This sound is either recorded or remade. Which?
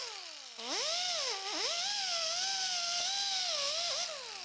recorded